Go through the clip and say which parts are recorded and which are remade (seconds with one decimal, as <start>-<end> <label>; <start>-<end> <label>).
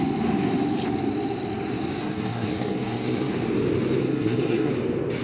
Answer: 0.0-2.0 recorded; 2.0-3.3 remade; 3.3-4.0 recorded; 4.0-4.7 remade; 4.7-5.2 recorded